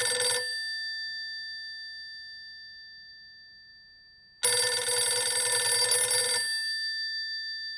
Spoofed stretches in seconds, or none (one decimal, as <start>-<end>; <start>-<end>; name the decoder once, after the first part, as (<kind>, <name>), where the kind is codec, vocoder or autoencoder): none